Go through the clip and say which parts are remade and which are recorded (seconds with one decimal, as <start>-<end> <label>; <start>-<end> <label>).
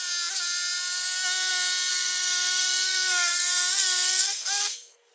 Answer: 0.0-1.9 recorded; 1.9-5.1 remade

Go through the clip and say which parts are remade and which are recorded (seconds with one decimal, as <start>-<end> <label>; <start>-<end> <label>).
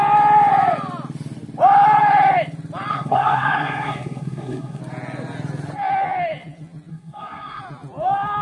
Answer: 0.0-2.9 recorded; 2.9-4.8 remade; 4.8-6.9 recorded; 6.9-7.6 remade; 7.6-8.4 recorded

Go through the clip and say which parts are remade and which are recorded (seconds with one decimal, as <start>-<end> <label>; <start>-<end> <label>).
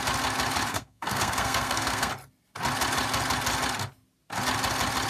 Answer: 0.0-0.7 recorded; 0.7-2.1 remade; 2.1-5.1 recorded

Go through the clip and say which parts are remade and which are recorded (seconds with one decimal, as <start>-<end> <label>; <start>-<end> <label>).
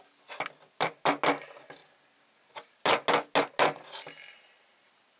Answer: 0.0-5.2 recorded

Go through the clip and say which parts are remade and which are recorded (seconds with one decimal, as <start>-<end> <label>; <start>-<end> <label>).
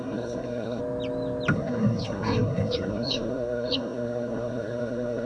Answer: 0.0-0.8 remade; 0.8-1.5 recorded; 1.5-5.3 remade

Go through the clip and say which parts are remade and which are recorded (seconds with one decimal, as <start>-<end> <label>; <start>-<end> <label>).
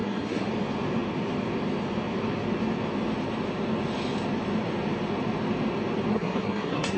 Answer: 0.0-0.5 remade; 0.5-6.1 recorded; 6.1-7.0 remade